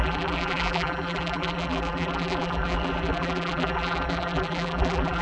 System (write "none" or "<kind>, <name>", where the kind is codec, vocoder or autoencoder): vocoder, BigVGAN v2